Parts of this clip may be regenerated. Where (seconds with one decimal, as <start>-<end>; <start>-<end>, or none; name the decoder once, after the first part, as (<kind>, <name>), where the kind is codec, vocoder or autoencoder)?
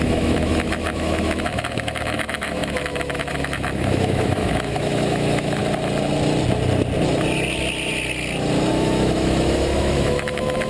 0.0-5.6 (autoencoder, DAC-VAE); 8.7-10.7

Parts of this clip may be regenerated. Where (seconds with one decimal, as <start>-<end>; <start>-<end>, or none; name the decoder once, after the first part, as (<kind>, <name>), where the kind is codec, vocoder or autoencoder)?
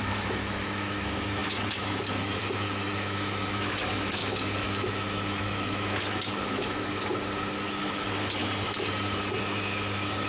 0.0-7.1 (autoencoder, DAC-VAE); 7.7-8.4; 9.4-10.3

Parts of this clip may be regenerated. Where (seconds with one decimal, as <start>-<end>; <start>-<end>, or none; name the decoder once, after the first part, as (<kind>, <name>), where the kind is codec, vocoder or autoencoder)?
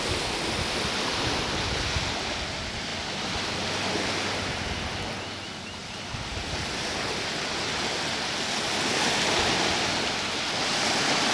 none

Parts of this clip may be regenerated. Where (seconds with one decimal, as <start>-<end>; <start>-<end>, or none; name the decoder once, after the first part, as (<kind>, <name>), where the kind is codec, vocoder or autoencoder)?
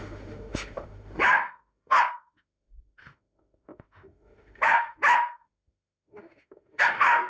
0.0-7.3 (autoencoder, DAC-VAE)